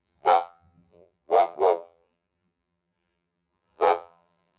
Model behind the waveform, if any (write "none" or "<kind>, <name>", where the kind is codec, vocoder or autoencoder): vocoder, BigVGAN v2